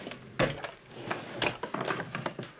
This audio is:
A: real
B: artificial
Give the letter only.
A